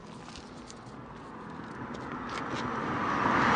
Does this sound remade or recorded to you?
recorded